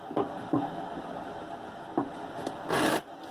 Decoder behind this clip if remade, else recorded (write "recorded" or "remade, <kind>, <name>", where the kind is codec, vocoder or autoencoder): recorded